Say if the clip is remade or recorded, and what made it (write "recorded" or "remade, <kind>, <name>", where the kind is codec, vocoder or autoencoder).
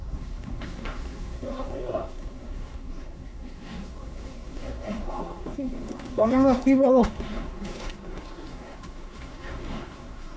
remade, codec, SNAC